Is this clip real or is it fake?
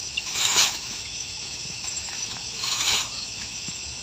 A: fake